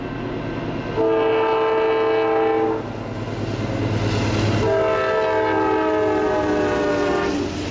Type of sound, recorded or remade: recorded